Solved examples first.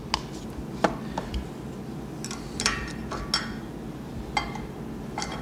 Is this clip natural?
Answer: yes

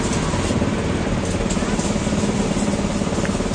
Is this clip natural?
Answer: yes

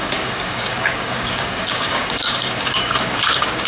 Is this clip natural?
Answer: no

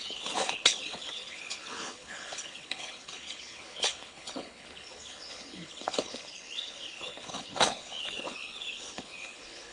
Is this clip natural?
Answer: no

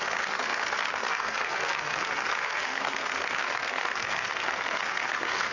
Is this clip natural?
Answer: no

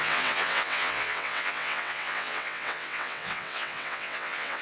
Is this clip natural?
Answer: no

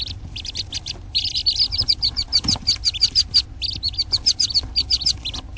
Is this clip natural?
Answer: yes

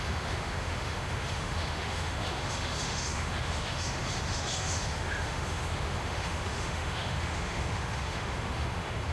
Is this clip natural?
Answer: no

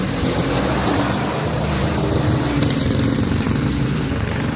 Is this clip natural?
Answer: no